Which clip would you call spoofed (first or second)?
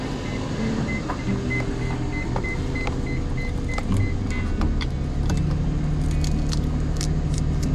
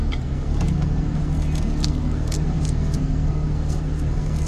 second